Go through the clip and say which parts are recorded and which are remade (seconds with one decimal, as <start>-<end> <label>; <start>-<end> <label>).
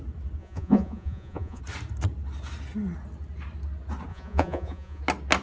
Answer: 0.0-0.4 recorded; 0.4-1.6 remade; 1.6-4.1 recorded; 4.1-5.0 remade; 5.0-5.4 recorded